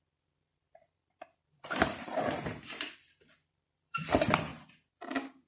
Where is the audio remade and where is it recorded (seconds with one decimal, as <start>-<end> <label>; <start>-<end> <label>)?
0.0-4.5 remade; 4.5-5.5 recorded